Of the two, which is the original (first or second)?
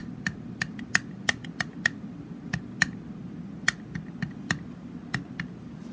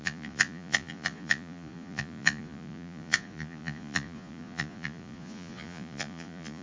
first